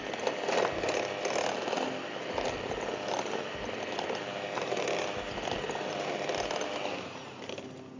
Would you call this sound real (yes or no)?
yes